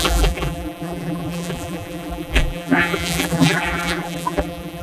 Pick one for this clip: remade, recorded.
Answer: remade